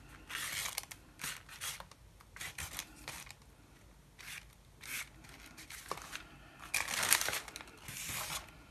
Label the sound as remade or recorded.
recorded